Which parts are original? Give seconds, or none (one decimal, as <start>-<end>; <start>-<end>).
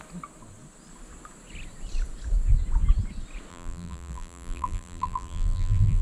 0.0-3.5